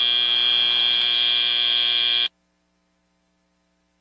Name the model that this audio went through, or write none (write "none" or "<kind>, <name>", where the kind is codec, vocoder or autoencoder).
none